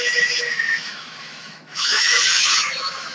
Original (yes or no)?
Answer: no